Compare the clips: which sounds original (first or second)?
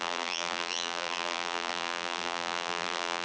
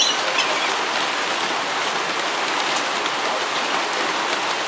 second